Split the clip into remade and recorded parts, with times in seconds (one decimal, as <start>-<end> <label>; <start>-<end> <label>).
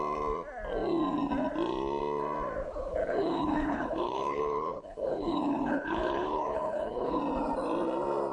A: 0.0-3.0 recorded; 3.0-7.2 remade; 7.2-8.3 recorded